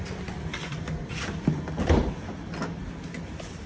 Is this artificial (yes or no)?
yes